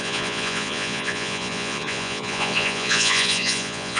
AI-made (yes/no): yes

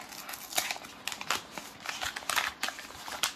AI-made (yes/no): no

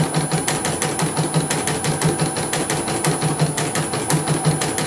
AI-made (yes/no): no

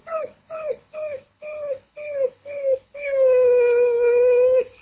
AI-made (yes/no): yes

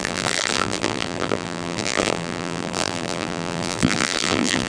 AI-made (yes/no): yes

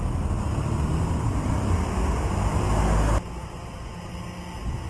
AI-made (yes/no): no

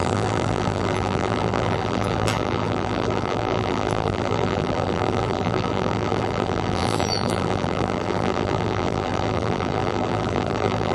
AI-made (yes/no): yes